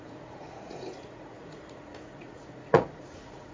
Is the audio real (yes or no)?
no